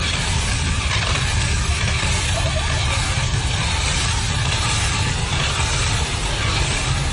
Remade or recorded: recorded